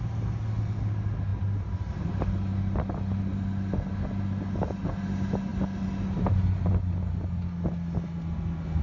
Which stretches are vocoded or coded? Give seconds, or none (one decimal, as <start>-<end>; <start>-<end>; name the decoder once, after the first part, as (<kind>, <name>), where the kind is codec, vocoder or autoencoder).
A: none

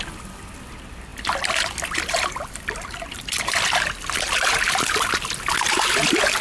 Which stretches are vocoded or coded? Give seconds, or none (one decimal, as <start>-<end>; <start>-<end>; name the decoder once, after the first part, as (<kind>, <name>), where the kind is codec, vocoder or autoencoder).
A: none

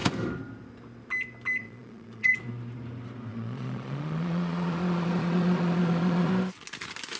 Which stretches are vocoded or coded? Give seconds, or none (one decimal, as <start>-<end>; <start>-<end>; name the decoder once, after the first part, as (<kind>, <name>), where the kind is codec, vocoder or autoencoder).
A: 1.6-2.4 (vocoder, Vocos); 3.3-6.3

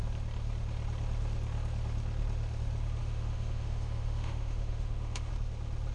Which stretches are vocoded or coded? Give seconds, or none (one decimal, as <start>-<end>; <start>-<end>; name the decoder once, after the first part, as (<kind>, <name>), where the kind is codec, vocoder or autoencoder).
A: 3.0-5.3 (autoencoder, DAC-VAE)

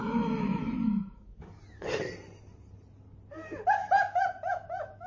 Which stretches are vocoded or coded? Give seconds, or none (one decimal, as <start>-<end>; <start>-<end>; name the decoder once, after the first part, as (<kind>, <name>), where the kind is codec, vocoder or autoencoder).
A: 0.0-1.6 (autoencoder, DAC-VAE); 3.8-5.1

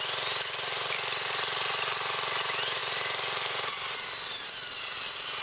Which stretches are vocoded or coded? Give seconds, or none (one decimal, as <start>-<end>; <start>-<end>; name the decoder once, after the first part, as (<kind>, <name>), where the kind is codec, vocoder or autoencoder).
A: 0.0-5.4 (vocoder, BigVGAN v2)

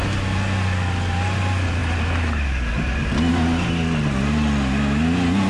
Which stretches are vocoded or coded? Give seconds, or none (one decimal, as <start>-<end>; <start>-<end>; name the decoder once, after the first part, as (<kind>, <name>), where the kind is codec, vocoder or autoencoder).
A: none

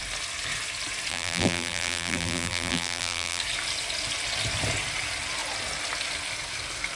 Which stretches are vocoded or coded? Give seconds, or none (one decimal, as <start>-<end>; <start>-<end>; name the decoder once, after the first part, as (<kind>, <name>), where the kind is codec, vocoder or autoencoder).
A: 1.1-3.4 (vocoder, BigVGAN v2)